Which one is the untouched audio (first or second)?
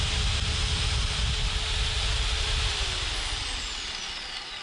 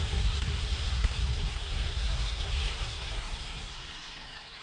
first